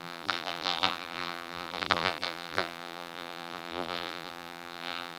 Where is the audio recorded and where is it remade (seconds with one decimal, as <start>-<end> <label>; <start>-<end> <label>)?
0.0-5.2 remade